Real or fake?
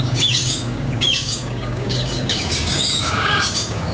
fake